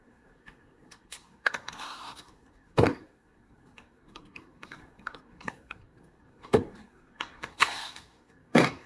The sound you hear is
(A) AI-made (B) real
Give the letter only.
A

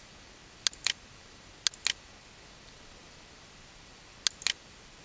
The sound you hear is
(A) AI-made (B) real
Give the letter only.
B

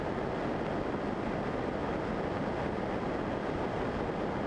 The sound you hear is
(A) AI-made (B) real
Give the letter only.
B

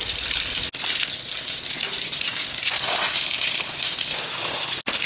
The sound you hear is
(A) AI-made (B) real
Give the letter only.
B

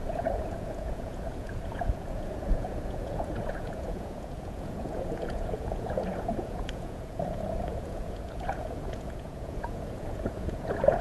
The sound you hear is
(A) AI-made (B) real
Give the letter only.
A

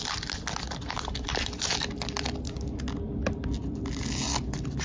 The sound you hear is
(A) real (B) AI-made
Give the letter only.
A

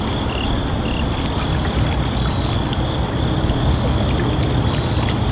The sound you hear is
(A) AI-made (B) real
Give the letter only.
B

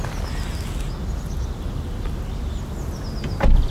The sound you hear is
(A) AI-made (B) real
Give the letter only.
B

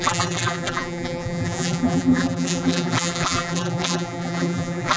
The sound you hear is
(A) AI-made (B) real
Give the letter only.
A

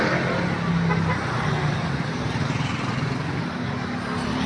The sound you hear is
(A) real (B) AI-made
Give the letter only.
A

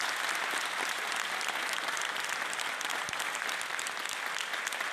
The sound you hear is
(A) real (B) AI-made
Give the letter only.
A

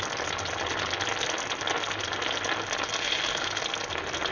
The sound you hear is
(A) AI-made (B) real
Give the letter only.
B